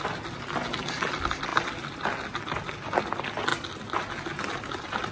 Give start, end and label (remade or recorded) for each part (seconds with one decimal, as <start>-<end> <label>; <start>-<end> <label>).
0.0-5.1 recorded